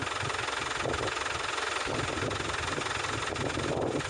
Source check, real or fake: real